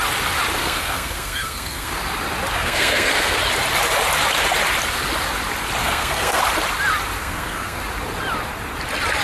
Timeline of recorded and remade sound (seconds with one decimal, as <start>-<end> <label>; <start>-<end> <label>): 0.0-0.6 recorded; 0.6-2.0 remade; 2.0-2.5 recorded; 2.5-3.4 remade; 3.4-5.8 recorded; 5.8-6.4 remade; 6.4-7.2 recorded; 7.2-7.8 remade; 7.8-9.2 recorded